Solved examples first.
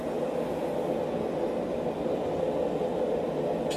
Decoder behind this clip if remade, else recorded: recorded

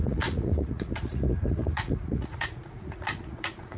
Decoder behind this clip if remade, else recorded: remade, vocoder, Vocos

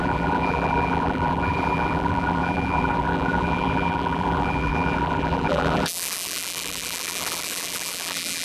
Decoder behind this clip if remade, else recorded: remade, vocoder, BigVGAN v2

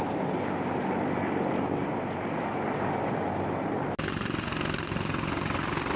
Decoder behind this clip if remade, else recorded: recorded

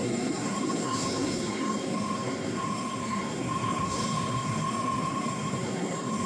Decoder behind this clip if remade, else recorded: remade, codec, SNAC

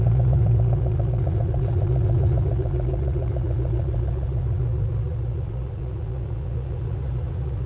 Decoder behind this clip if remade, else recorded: remade, vocoder, Vocos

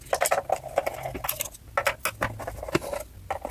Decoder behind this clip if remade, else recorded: recorded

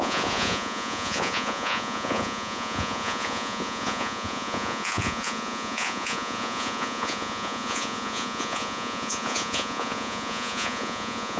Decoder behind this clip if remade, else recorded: remade, vocoder, Vocos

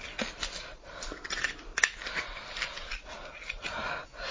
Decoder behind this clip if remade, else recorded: recorded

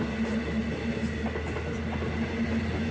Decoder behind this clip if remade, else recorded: recorded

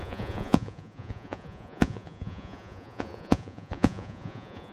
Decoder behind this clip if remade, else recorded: remade, vocoder, Vocos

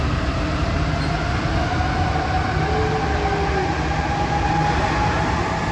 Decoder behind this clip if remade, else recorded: recorded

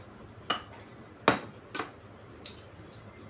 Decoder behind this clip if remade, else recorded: recorded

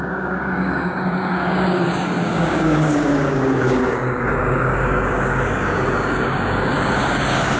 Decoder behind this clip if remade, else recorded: remade, codec, DAC